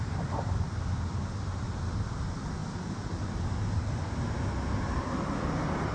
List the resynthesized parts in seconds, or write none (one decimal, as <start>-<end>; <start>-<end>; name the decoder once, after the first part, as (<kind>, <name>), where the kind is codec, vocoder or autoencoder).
none